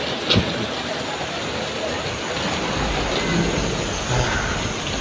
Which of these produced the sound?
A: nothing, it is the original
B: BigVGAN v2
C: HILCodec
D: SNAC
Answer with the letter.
A